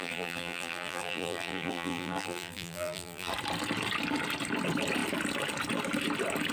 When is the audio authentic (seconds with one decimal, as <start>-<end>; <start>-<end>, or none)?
3.3-6.5